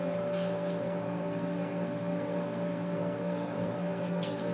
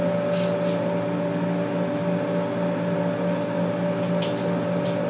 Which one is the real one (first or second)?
second